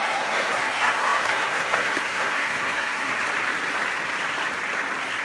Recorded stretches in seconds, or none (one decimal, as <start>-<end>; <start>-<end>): 3.1-5.2